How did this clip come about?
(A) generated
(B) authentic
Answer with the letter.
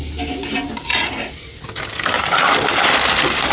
B